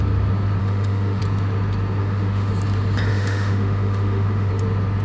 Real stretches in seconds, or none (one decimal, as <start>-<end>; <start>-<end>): 0.0-0.6; 1.2-2.0; 2.5-3.1; 4.5-5.0